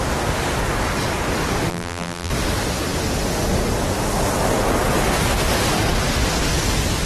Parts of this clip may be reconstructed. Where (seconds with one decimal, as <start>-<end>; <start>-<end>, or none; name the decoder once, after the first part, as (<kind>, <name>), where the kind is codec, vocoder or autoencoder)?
1.7-2.3 (vocoder, BigVGAN v2)